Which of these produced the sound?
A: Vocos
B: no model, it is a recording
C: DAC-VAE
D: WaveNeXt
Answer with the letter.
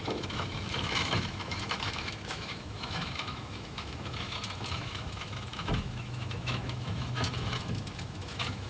C